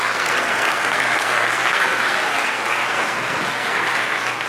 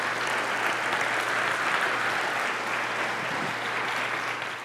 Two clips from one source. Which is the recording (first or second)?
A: second